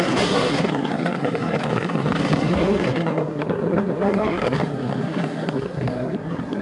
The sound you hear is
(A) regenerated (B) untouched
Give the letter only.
A